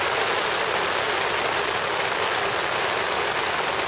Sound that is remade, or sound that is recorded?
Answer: recorded